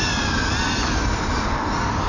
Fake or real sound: real